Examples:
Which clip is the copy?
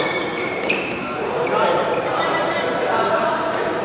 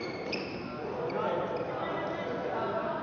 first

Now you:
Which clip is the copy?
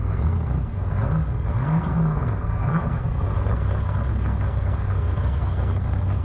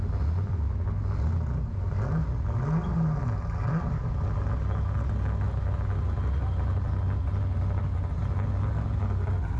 first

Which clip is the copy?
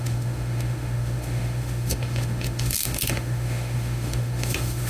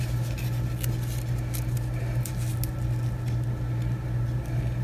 first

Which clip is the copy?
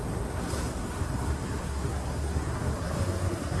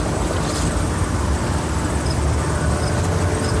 first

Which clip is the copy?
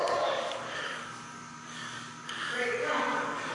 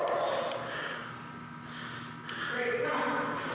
first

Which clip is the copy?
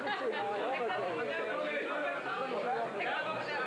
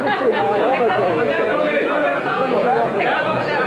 second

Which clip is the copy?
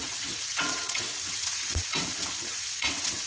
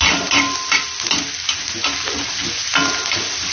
first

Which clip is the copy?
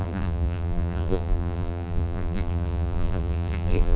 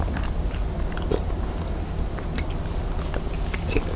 first